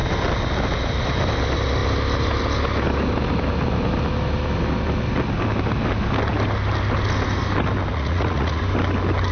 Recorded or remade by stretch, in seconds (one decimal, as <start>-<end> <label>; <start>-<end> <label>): 0.0-7.9 recorded; 7.9-8.6 remade; 8.6-9.3 recorded